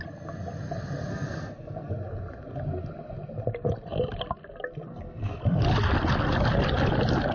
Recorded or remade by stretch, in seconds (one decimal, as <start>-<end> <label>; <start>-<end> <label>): 0.0-1.1 recorded; 1.1-1.9 remade; 1.9-4.9 recorded; 4.9-5.4 remade; 5.4-7.3 recorded